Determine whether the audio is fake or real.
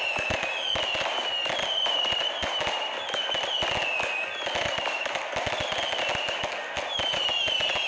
real